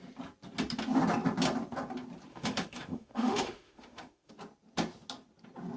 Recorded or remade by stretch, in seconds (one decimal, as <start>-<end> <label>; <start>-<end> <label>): 0.0-2.3 recorded; 2.3-4.3 remade; 4.3-5.8 recorded